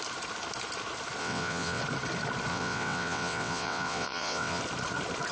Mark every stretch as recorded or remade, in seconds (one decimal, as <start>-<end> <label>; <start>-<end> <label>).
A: 0.0-1.2 recorded; 1.2-1.8 remade; 1.8-2.5 recorded; 2.5-4.6 remade; 4.6-5.3 recorded